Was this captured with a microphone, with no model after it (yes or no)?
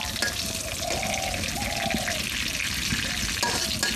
yes